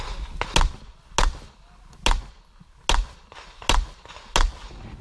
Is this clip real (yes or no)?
yes